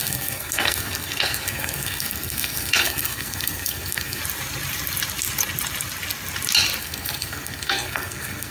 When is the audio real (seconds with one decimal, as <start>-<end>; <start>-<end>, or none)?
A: 4.2-6.8